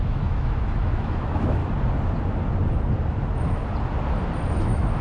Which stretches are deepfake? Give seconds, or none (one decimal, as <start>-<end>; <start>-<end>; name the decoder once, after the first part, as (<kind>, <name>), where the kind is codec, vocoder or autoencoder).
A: 0.0-1.6 (autoencoder, DAC-VAE); 4.6-5.0

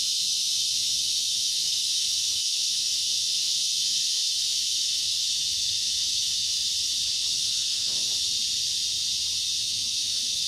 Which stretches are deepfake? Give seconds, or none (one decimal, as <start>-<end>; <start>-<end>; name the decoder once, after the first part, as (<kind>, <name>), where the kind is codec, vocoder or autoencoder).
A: 0.0-6.6 (autoencoder, DAC-VAE); 7.1-8.1; 9.6-10.5